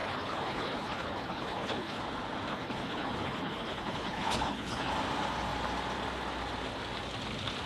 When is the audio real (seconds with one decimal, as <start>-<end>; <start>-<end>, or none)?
2.0-2.5; 4.9-7.7